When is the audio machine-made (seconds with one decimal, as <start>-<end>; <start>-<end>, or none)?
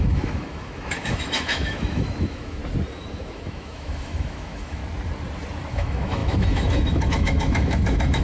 0.0-2.6; 3.1-4.8; 5.7-8.2